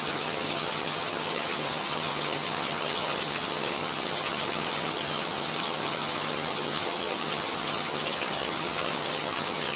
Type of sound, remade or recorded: remade